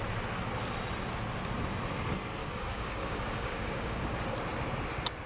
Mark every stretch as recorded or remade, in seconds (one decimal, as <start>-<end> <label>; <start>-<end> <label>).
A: 0.0-2.4 recorded; 2.4-4.0 remade; 4.0-5.3 recorded